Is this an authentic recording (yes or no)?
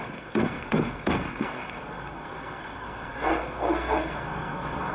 no